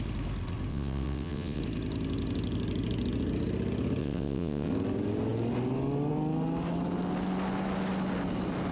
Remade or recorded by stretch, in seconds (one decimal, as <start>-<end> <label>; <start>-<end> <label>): 0.0-0.7 recorded; 0.7-1.6 remade; 1.6-4.0 recorded; 4.0-4.7 remade; 4.7-8.7 recorded